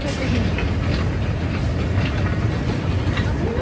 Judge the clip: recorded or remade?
recorded